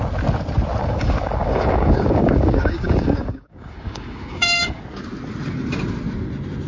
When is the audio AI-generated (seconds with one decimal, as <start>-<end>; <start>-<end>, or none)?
0.8-4.8